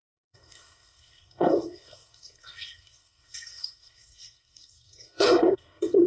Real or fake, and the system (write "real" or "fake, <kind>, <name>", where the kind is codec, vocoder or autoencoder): fake, codec, SNAC